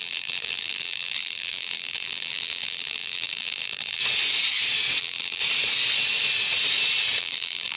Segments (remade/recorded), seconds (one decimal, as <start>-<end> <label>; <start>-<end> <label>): 0.0-4.0 remade; 4.0-5.0 recorded; 5.0-5.4 remade; 5.4-7.2 recorded; 7.2-7.8 remade